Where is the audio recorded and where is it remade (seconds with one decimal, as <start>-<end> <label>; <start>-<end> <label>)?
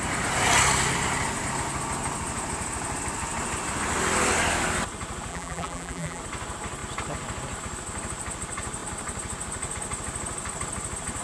0.0-5.3 recorded; 5.3-6.2 remade; 6.2-11.2 recorded